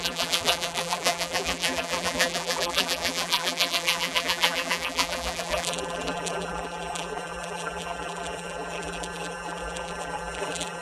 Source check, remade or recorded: remade